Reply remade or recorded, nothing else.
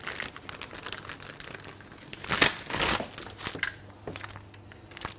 recorded